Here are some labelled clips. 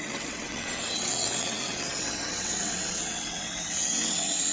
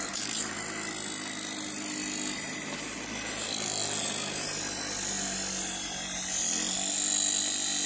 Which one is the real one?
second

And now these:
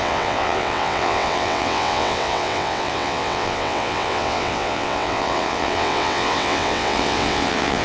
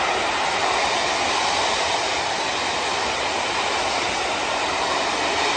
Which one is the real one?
second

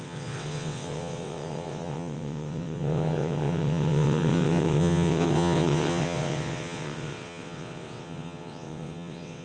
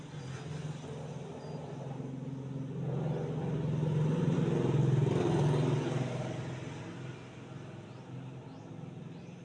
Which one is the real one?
second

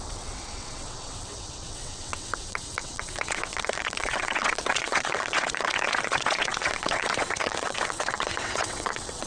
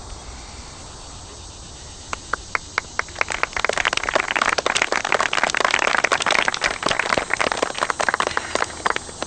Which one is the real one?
second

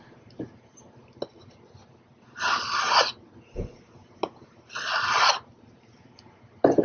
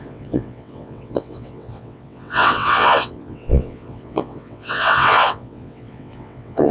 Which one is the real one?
first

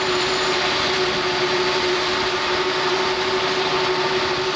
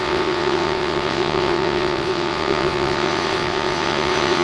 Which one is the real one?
first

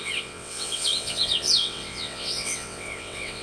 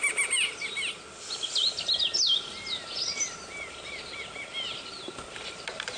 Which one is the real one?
second